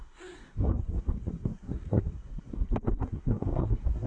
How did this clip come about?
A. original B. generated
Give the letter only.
B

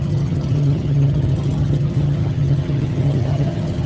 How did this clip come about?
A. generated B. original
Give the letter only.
A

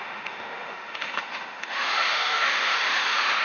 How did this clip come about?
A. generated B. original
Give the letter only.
A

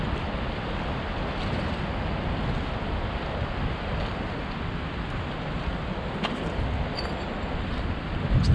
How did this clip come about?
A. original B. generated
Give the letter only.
A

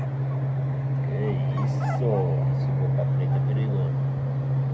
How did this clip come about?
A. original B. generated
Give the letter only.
A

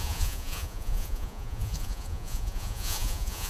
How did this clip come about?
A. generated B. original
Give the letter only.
A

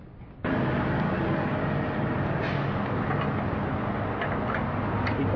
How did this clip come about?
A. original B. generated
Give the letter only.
A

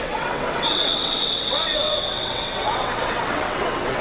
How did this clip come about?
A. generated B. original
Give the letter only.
A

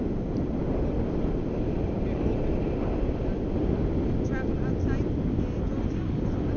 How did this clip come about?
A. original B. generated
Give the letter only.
A